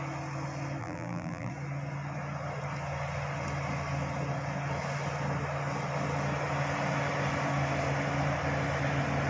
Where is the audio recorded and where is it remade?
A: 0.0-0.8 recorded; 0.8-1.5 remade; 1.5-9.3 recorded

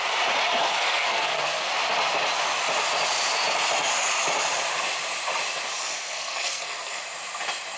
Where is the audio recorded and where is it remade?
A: 0.0-0.7 recorded; 0.7-1.7 remade; 1.7-5.8 recorded; 5.8-7.0 remade; 7.0-7.8 recorded

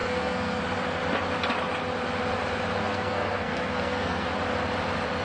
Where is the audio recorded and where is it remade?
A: 0.0-0.6 remade; 0.6-2.8 recorded; 2.8-4.3 remade; 4.3-5.2 recorded

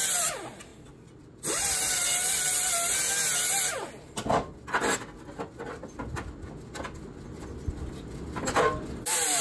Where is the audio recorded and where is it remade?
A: 0.0-9.4 recorded

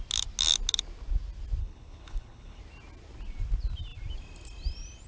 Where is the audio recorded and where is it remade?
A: 0.0-1.6 recorded; 1.6-2.6 remade; 2.6-5.1 recorded

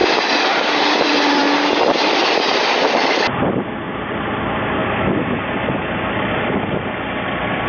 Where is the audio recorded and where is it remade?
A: 0.0-7.7 recorded

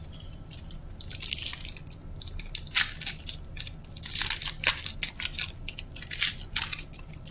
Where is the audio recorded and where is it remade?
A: 0.0-7.3 recorded